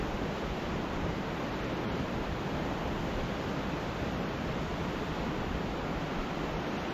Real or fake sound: real